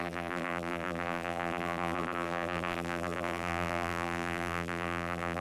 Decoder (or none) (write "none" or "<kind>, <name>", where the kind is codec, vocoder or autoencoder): vocoder, BigVGAN v2